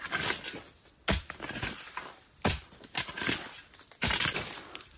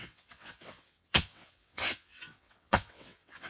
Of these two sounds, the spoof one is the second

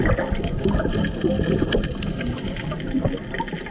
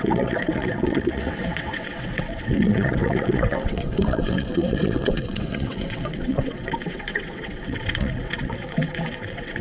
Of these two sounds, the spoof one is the second